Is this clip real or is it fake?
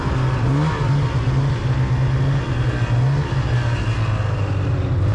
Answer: real